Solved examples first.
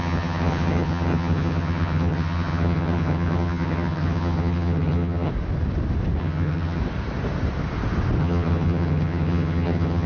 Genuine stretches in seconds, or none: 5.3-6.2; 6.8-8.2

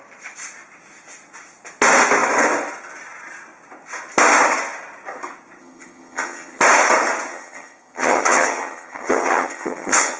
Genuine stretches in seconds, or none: 0.0-5.6; 6.6-7.3

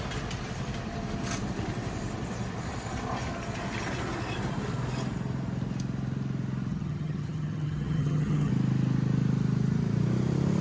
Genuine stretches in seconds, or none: 0.0-6.7; 8.5-10.6

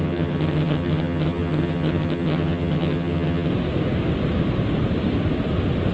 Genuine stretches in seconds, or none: 3.5-5.9